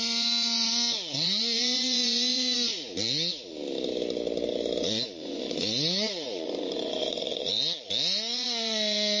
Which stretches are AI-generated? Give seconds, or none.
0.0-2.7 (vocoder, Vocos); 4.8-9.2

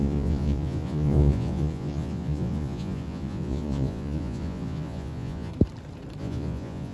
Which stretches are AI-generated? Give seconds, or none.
0.0-5.5 (vocoder, Vocos); 6.2-6.9

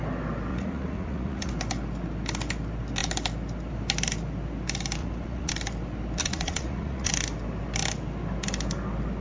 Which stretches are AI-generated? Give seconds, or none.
0.5-1.5 (vocoder, Vocos); 5.0-5.5; 6.2-7.1

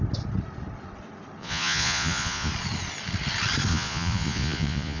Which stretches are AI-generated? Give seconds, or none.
1.4-2.5 (vocoder, Vocos); 3.7-5.0

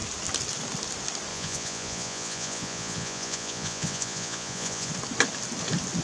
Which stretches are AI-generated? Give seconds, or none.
1.3-4.9 (vocoder, Vocos)

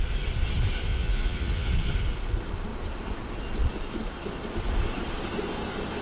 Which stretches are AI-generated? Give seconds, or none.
0.9-1.7 (vocoder, Vocos)